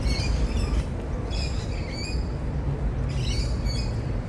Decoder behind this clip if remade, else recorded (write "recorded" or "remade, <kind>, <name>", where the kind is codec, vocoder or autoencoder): remade, vocoder, BigVGAN v2